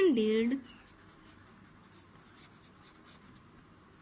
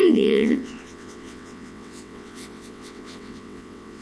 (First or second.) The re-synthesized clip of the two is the second